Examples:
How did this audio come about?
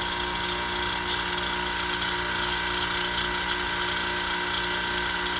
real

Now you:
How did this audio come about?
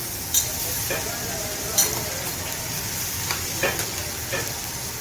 real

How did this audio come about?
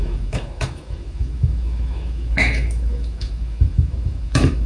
fake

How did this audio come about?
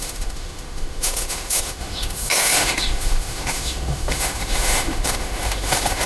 fake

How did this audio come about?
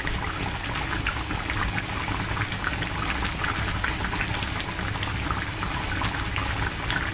real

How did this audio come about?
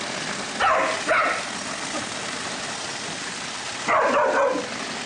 real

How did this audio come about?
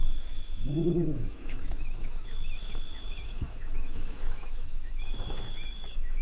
fake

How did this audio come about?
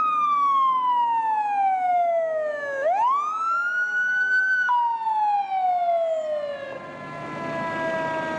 real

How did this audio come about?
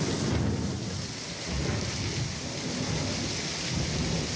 real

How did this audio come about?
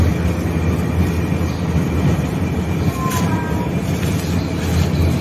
real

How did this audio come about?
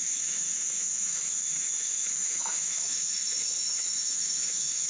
fake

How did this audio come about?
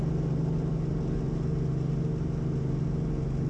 real